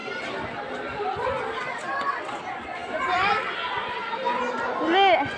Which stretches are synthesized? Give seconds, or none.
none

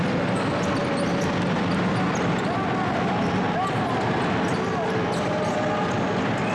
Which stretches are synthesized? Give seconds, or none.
none

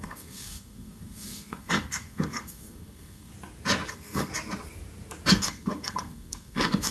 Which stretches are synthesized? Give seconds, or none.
0.0-3.3 (codec, SNAC); 3.9-4.3; 5.3-6.9

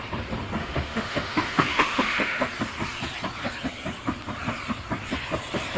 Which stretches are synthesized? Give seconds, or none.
0.6-2.5 (autoencoder, DAC-VAE)